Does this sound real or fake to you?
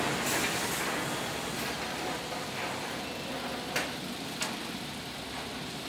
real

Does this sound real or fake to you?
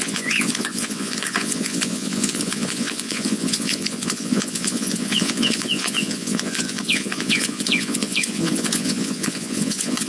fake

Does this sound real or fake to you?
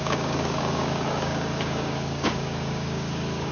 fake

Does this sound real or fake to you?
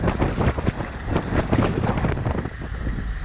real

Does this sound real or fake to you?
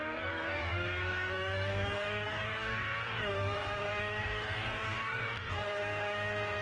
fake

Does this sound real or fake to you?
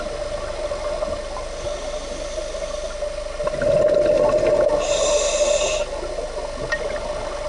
real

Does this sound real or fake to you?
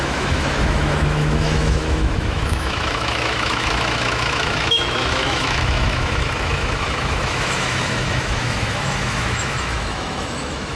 fake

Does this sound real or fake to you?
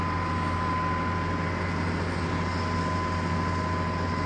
real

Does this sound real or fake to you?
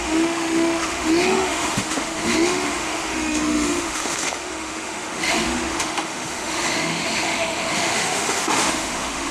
fake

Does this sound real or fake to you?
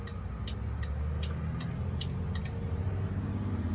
real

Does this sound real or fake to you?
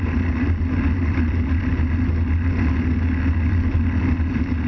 real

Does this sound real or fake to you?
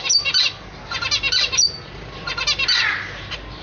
real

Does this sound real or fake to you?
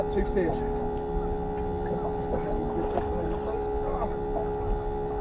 real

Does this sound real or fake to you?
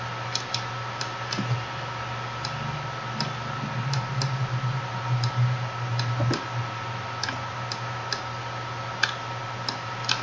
real